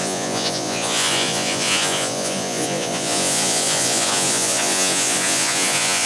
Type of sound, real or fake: fake